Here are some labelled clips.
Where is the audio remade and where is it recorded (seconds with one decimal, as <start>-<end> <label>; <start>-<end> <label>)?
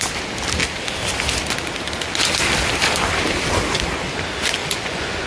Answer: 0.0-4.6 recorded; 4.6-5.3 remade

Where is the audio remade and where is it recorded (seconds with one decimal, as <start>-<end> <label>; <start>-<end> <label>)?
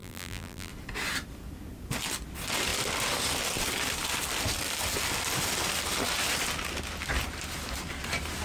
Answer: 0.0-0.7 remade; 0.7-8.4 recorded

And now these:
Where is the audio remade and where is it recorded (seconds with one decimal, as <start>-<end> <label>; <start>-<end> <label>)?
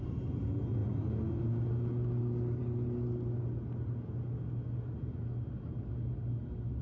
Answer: 0.0-6.8 recorded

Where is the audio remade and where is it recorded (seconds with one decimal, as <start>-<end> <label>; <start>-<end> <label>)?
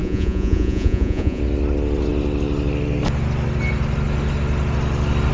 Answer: 0.0-1.4 remade; 1.4-5.3 recorded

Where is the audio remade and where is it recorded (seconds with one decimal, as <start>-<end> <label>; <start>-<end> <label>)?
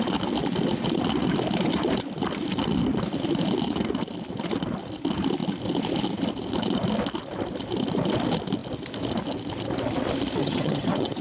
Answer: 0.0-10.4 recorded; 10.4-11.2 remade